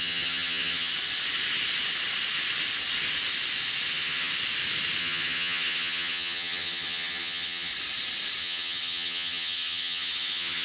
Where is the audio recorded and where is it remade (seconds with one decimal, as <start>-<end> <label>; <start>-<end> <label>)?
0.0-0.9 remade; 0.9-3.9 recorded; 3.9-4.3 remade; 4.3-5.0 recorded; 5.0-7.7 remade; 7.7-8.4 recorded; 8.4-10.6 remade